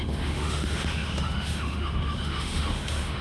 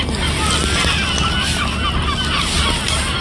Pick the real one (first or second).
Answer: second